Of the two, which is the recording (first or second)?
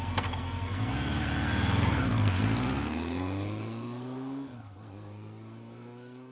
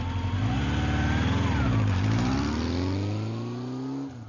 second